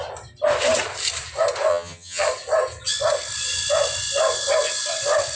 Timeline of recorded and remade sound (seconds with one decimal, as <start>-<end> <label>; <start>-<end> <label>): 0.0-1.7 recorded; 1.7-2.2 remade; 2.2-5.4 recorded